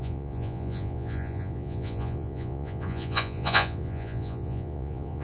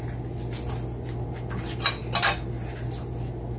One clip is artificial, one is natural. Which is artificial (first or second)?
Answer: first